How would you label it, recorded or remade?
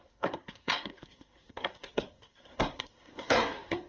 remade